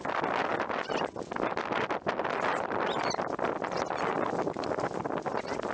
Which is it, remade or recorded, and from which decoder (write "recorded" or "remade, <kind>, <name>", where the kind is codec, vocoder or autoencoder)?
recorded